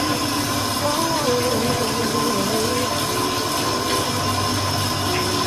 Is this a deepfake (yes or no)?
no